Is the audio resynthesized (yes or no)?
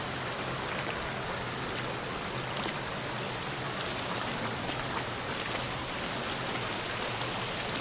no